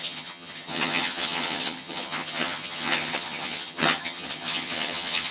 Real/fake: fake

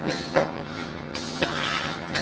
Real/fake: fake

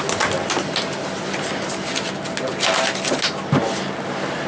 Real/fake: real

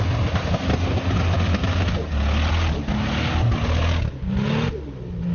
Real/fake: real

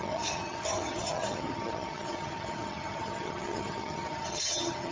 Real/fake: fake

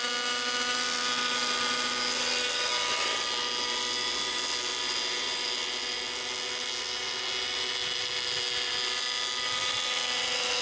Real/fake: real